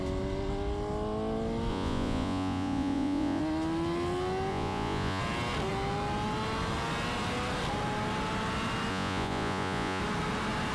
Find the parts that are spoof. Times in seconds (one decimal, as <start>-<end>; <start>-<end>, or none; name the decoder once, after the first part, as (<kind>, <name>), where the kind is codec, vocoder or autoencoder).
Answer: 1.7-3.4 (vocoder, Vocos); 4.5-5.2; 8.9-10.0